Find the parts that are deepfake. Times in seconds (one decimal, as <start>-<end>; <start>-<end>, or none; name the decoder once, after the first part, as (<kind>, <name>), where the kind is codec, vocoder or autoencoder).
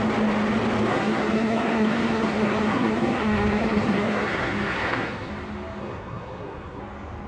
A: 0.9-5.3 (codec, SNAC); 5.8-6.8